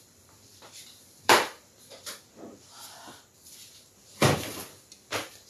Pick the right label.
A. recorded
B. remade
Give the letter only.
B